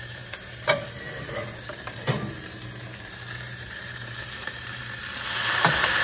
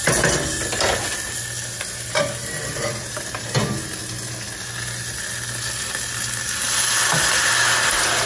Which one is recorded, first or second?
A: second